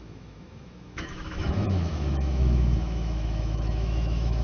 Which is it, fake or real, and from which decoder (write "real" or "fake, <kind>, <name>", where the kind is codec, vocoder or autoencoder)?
fake, autoencoder, DAC-VAE